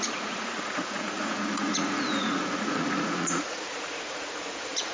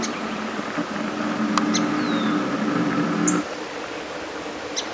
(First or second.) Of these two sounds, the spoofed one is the first